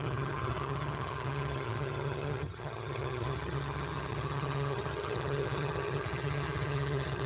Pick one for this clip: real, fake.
fake